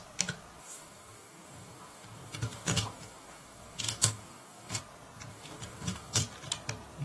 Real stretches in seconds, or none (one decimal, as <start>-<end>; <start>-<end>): 0.0-0.6; 4.8-5.3; 6.2-7.0